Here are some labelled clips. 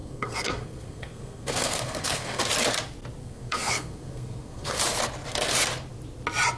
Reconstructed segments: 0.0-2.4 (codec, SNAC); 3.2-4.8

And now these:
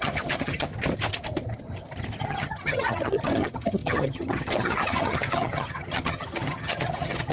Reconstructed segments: 0.0-0.7 (vocoder, HiFi-GAN); 2.2-7.3

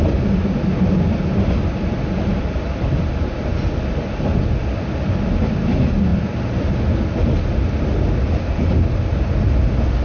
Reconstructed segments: none

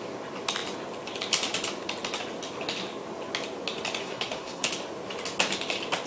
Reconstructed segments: 4.0-4.7 (codec, SNAC)

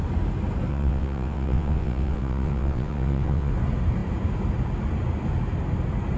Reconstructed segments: 0.7-3.5 (vocoder, WaveNeXt)

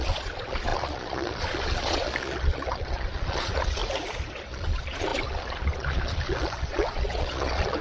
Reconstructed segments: 0.0-3.8 (vocoder, Vocos); 4.5-7.8

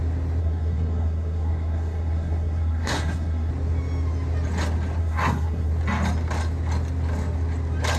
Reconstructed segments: 0.4-3.5 (codec, SNAC); 5.0-5.7

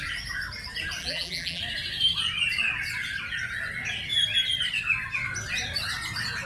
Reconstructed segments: 1.0-1.6 (vocoder, BigVGAN v2)